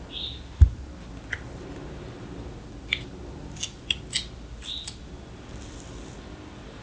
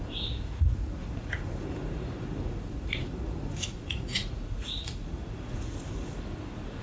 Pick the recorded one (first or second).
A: first